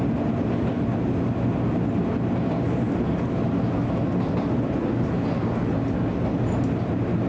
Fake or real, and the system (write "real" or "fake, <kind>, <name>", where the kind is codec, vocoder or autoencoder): real